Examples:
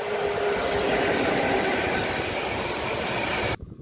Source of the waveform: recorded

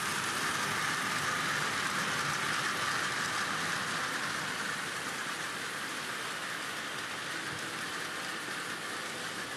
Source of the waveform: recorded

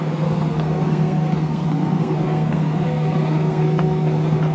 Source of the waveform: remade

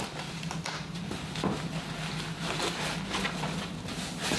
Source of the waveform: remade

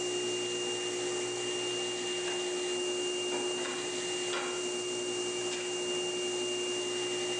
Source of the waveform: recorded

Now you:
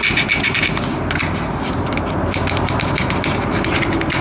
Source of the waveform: recorded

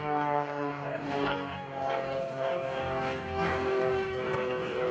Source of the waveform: remade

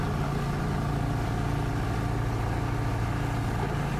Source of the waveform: recorded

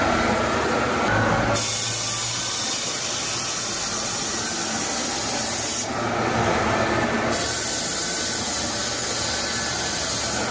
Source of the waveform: recorded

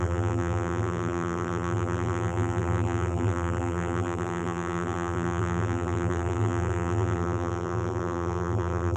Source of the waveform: remade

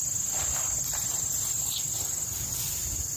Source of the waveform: recorded